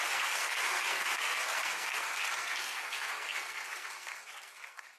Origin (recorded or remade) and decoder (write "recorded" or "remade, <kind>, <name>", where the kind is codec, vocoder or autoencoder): remade, codec, SNAC